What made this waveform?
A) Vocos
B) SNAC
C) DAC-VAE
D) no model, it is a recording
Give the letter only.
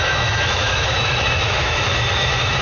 C